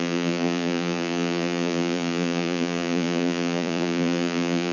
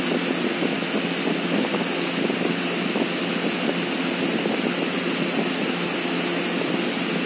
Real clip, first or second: second